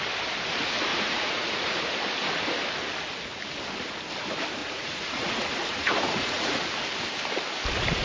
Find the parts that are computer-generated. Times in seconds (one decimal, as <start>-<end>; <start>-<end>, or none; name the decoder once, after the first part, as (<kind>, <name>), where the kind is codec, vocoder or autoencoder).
0.9-1.8 (vocoder, Vocos); 4.6-6.6